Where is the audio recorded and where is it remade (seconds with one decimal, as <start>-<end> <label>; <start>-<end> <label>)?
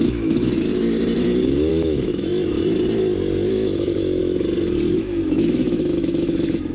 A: 0.0-0.7 remade; 0.7-1.7 recorded; 1.7-2.3 remade; 2.3-3.5 recorded; 3.5-4.2 remade; 4.2-5.0 recorded; 5.0-6.7 remade